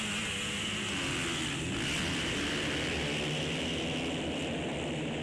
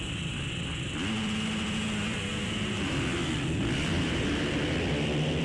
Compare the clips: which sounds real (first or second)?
first